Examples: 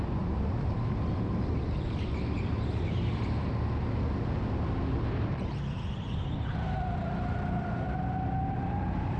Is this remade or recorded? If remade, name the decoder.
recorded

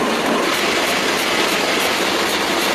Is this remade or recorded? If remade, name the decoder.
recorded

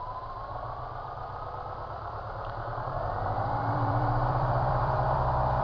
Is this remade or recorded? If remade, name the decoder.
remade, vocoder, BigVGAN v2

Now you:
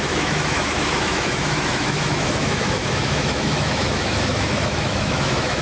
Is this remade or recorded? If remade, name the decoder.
remade, autoencoder, DAC-VAE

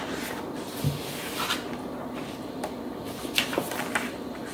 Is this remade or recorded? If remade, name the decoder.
remade, vocoder, BigVGAN v2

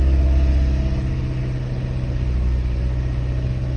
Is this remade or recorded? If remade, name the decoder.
recorded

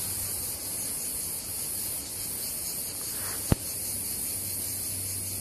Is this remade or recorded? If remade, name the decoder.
recorded